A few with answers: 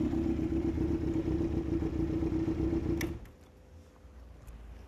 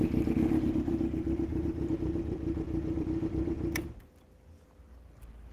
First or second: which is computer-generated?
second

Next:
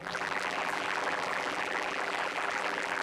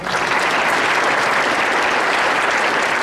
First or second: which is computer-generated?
first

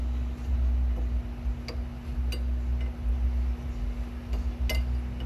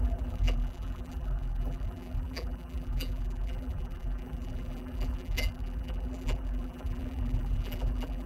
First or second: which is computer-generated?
second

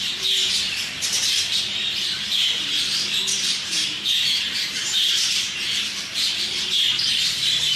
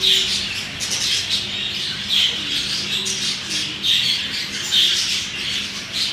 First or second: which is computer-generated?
first